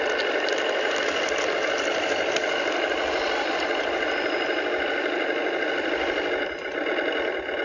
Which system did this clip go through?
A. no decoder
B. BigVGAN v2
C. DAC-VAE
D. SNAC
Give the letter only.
A